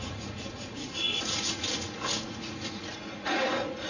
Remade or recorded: remade